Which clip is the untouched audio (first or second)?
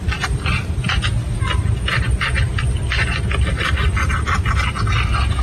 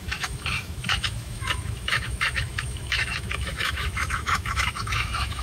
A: first